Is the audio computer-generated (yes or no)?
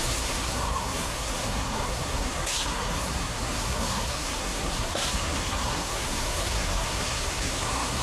yes